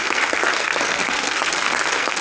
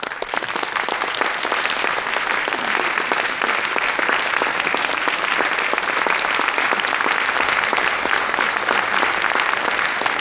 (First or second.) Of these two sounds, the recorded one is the second